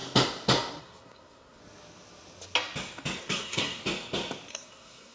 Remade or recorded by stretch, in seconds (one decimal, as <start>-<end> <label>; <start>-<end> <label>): 0.0-0.8 recorded; 0.8-1.6 remade; 1.6-3.2 recorded; 3.2-3.8 remade; 3.8-4.5 recorded; 4.5-5.1 remade